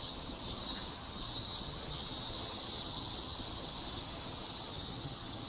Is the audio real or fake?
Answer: fake